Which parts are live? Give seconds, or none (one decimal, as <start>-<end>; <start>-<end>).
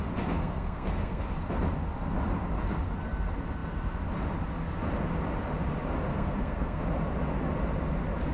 0.0-0.4; 1.2-6.1; 6.8-8.3